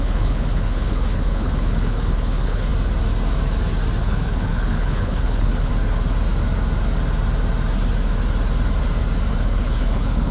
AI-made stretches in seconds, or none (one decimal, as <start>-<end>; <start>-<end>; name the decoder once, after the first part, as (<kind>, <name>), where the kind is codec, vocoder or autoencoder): 0.0-2.7 (codec, HILCodec); 4.0-5.7; 9.3-10.3

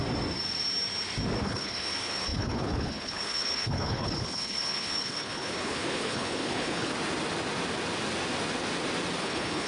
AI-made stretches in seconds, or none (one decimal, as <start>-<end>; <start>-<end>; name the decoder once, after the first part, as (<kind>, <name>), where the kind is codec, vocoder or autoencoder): 1.4-6.9 (codec, HILCodec); 9.2-9.7

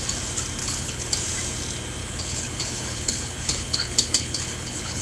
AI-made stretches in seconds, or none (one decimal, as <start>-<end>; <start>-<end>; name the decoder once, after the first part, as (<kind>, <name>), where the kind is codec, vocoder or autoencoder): 0.6-1.1 (codec, HILCodec); 2.0-5.0

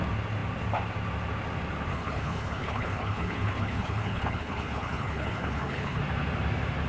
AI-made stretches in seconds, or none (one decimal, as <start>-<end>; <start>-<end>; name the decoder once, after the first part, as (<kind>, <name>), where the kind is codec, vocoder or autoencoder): 1.9-6.0 (codec, HILCodec)